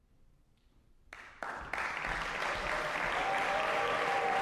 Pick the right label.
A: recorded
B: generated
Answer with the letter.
A